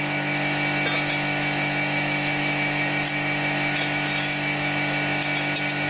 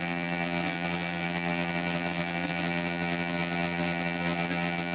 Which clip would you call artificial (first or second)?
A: second